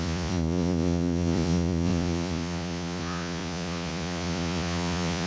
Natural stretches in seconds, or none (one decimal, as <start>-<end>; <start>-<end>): none

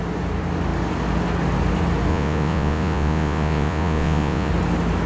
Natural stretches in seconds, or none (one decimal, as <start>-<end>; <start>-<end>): 0.0-2.1; 4.5-5.1

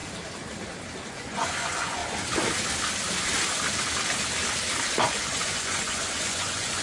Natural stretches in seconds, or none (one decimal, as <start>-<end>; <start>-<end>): 0.0-1.1; 2.0-5.0

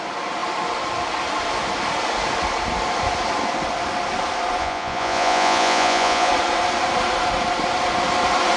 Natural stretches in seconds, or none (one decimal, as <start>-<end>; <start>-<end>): 0.0-4.6; 6.3-8.6

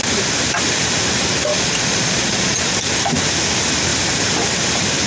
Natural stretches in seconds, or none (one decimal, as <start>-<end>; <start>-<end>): 0.0-1.5; 2.6-5.1